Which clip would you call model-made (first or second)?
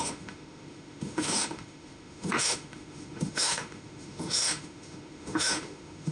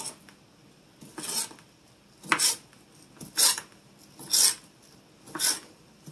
first